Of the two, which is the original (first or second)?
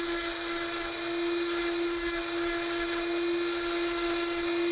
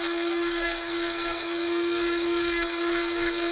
first